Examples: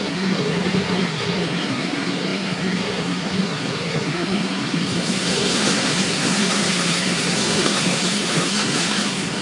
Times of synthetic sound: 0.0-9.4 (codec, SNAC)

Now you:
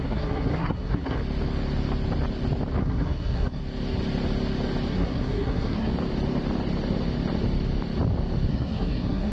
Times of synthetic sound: 0.0-1.2 (codec, SNAC); 2.8-3.6; 4.9-5.9; 8.5-9.3

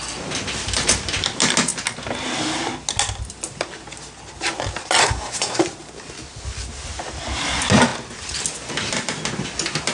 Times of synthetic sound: 5.0-5.6 (codec, SNAC)

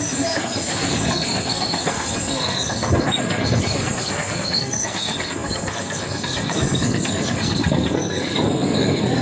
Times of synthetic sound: 0.0-9.2 (codec, SNAC)

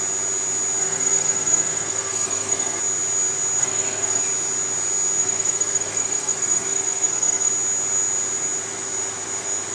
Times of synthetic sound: 0.8-2.8 (codec, SNAC); 3.6-4.2; 5.2-7.5

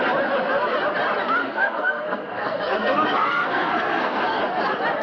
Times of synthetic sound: 1.4-4.4 (codec, SNAC)

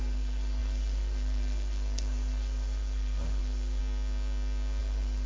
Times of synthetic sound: 0.0-3.8 (codec, SNAC); 4.8-5.3